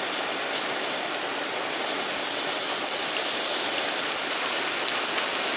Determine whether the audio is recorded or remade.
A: recorded